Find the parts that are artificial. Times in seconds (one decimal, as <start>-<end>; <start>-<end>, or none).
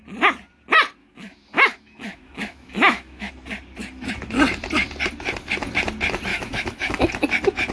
1.0-3.3; 6.3-7.1